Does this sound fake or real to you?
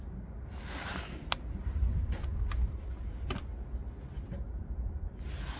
real